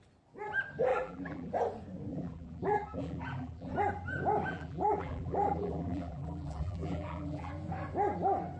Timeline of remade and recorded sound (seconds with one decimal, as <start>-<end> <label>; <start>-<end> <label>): 0.0-0.9 recorded; 0.9-1.5 remade; 1.5-2.1 recorded; 2.1-3.7 remade; 3.7-4.5 recorded; 4.5-7.5 remade; 7.5-8.6 recorded